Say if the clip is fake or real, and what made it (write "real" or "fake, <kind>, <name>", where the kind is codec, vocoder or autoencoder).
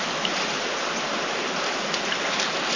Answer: real